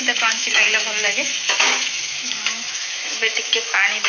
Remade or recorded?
remade